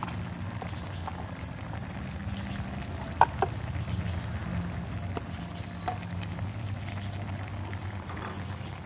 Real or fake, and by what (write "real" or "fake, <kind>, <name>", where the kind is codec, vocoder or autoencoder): real